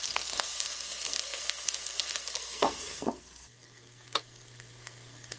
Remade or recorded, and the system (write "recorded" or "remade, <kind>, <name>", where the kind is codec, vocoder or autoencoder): remade, codec, SNAC